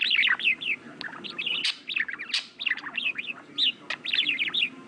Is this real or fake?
real